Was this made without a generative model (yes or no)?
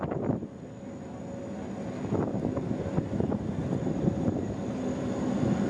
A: yes